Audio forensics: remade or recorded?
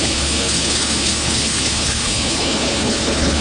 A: remade